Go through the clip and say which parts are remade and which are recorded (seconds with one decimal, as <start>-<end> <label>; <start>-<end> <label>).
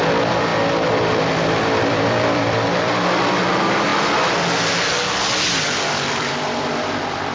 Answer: 0.0-0.5 remade; 0.5-1.2 recorded; 1.2-3.9 remade; 3.9-5.4 recorded; 5.4-7.3 remade